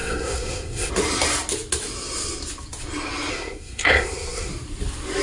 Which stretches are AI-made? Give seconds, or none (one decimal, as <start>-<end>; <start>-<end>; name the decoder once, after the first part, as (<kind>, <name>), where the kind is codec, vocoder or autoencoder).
0.0-0.9 (codec, SNAC); 3.3-4.5